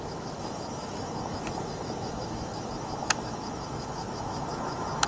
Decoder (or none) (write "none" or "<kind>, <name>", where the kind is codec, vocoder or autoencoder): autoencoder, DAC-VAE